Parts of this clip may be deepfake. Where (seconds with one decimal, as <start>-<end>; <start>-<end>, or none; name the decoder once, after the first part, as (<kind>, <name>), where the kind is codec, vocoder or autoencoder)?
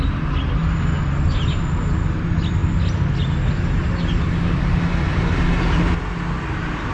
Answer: none